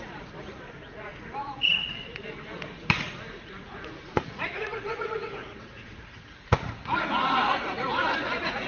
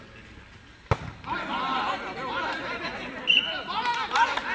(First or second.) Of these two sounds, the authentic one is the second